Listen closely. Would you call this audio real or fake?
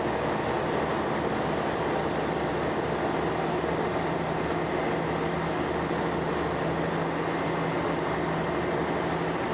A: real